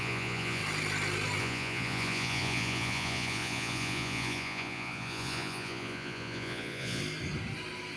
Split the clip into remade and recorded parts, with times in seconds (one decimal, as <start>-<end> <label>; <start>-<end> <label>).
0.0-0.6 remade; 0.6-1.4 recorded; 1.4-7.0 remade; 7.0-8.0 recorded